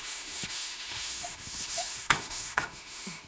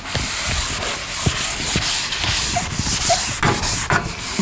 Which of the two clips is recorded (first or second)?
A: second